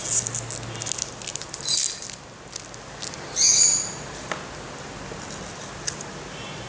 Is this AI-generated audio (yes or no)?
no